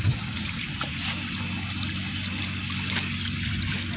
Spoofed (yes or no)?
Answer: no